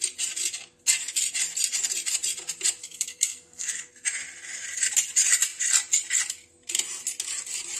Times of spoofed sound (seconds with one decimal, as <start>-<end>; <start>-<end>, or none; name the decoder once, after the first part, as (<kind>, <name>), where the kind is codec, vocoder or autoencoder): 2.8-3.9 (codec, SNAC)